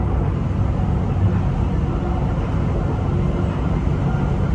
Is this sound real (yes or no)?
yes